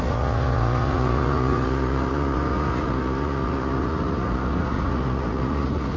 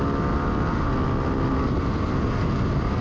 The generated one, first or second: first